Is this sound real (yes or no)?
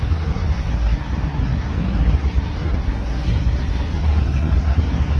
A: no